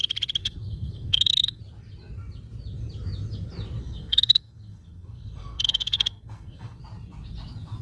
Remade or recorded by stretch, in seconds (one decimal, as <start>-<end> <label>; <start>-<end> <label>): 0.0-0.4 recorded; 0.4-1.6 remade; 1.6-3.8 recorded; 3.8-6.8 remade; 6.8-7.8 recorded